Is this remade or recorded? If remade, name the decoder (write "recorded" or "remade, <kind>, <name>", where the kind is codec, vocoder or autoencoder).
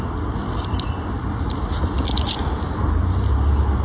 recorded